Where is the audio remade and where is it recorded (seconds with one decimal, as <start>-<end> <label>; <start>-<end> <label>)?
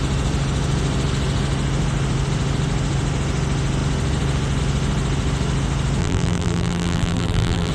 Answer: 0.0-6.0 recorded; 6.0-7.7 remade